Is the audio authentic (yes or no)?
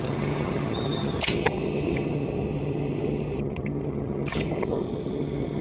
no